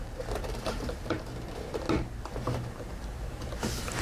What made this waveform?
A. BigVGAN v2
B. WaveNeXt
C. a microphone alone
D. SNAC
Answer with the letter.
A